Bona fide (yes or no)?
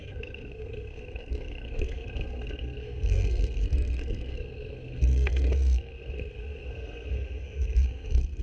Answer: no